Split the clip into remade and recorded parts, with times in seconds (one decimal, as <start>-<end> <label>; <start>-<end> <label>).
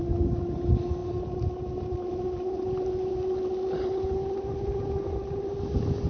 0.0-6.1 recorded